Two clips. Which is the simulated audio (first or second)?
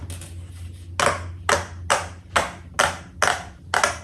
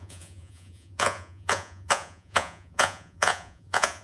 second